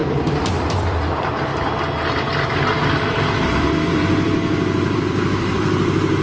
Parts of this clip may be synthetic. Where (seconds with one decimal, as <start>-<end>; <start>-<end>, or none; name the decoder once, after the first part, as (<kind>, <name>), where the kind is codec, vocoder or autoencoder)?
0.0-1.5 (vocoder, BigVGAN v2); 2.1-6.2